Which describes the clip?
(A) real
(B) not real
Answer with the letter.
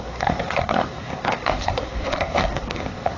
B